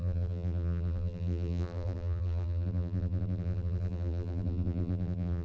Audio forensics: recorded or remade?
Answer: remade